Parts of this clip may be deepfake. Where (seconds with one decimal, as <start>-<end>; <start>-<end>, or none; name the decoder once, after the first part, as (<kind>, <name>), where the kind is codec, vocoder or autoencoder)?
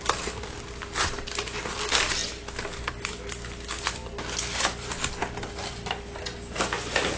none